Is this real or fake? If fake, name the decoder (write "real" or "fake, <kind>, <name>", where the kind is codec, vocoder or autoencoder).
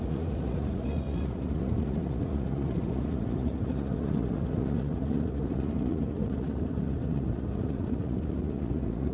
fake, vocoder, Vocos